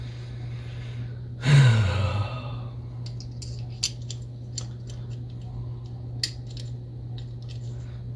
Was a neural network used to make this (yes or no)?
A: no